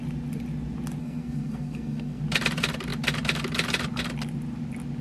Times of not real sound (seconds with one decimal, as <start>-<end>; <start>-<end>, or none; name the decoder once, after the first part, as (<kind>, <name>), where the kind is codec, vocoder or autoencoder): 1.0-2.2 (codec, SNAC)